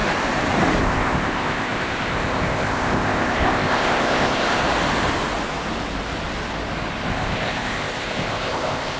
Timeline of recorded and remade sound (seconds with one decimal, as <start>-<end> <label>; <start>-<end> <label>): 0.0-0.8 recorded; 0.8-4.6 remade; 4.6-7.1 recorded; 7.1-9.0 remade